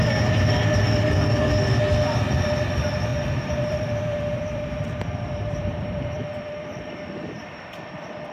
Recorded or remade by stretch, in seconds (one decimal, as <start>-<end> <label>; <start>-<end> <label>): 0.0-3.1 recorded; 3.1-7.9 remade; 7.9-8.3 recorded